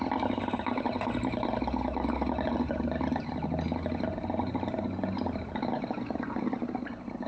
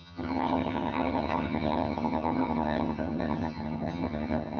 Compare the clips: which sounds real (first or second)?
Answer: first